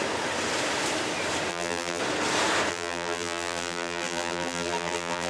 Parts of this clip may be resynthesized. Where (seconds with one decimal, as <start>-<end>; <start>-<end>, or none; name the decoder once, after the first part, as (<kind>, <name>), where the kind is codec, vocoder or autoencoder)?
1.5-2.0 (vocoder, BigVGAN v2); 2.7-5.3